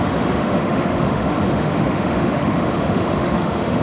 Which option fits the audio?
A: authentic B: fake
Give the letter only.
B